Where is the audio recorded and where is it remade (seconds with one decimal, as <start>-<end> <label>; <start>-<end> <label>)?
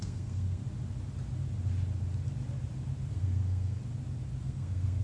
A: 0.0-0.6 remade; 0.6-3.1 recorded; 3.1-3.8 remade; 3.8-4.4 recorded; 4.4-5.0 remade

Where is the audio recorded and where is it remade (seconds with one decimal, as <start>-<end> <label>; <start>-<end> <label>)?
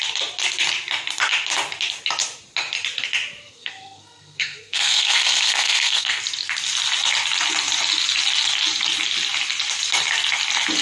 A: 0.0-3.4 recorded; 3.4-6.2 remade; 6.2-10.8 recorded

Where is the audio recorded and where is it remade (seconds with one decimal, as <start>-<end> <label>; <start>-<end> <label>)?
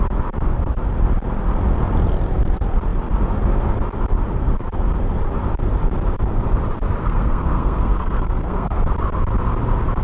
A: 0.0-7.0 recorded; 7.0-8.8 remade; 8.8-10.0 recorded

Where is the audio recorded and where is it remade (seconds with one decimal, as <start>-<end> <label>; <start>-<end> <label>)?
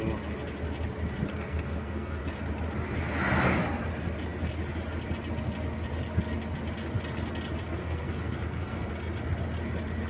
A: 0.0-1.3 recorded; 1.3-2.2 remade; 2.2-7.8 recorded; 7.8-8.9 remade; 8.9-10.1 recorded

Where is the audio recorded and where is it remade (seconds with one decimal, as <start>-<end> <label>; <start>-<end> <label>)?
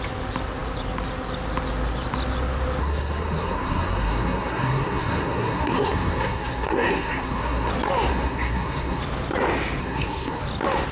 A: 0.0-2.8 recorded; 2.8-7.7 remade; 7.7-8.1 recorded; 8.1-9.0 remade; 9.0-9.8 recorded; 9.8-10.4 remade; 10.4-10.9 recorded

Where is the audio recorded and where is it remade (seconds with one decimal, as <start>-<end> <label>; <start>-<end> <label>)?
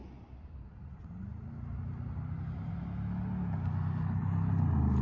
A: 0.0-5.0 recorded